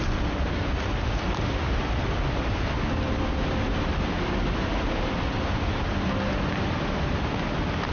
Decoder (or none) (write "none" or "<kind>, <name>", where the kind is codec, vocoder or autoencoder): none